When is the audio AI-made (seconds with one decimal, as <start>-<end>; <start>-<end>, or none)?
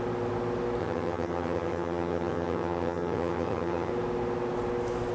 0.8-3.9